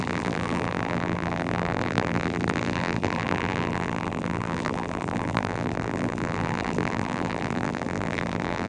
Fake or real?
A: fake